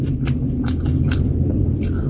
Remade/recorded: remade